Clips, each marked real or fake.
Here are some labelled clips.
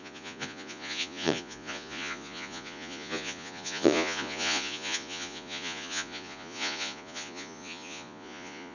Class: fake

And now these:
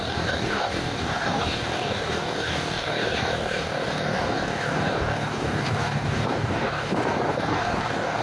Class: fake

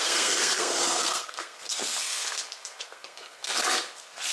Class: fake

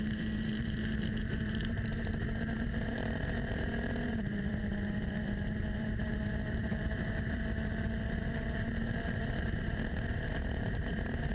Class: fake